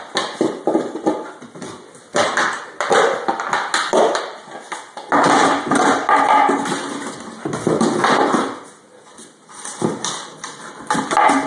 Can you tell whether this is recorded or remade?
recorded